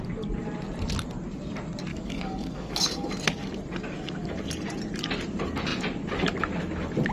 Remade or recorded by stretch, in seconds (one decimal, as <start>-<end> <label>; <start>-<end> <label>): 0.0-1.9 recorded; 1.9-3.1 remade; 3.1-7.1 recorded